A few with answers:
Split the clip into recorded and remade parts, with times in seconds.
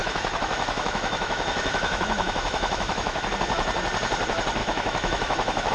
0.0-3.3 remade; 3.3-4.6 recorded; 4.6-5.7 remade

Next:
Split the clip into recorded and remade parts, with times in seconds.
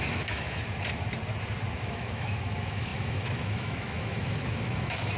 0.0-0.6 remade; 0.6-1.8 recorded; 1.8-5.2 remade